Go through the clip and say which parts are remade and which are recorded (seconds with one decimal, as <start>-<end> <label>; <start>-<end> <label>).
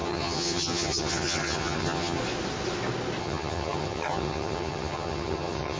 0.0-2.2 remade; 2.2-3.2 recorded; 3.2-5.8 remade